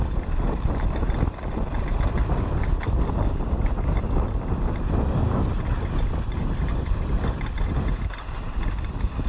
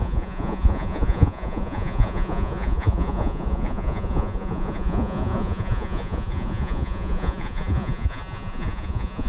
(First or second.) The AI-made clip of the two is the second